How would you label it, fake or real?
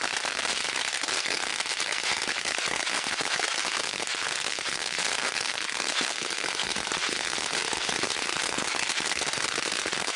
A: fake